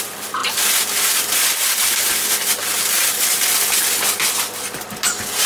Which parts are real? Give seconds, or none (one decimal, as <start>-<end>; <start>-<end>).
0.0-0.4; 3.7-5.5